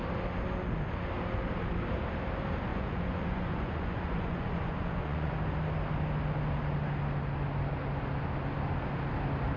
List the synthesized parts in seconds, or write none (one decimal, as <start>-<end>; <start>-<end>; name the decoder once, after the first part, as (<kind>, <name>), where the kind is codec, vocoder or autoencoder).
2.7-5.3 (vocoder, Vocos)